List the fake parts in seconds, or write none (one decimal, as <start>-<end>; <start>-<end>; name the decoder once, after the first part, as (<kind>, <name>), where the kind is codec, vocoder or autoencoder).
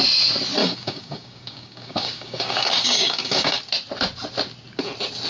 0.6-3.6 (codec, DAC)